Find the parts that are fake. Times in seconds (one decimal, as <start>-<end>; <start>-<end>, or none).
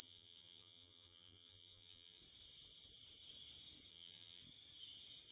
0.0-2.2; 3.9-4.4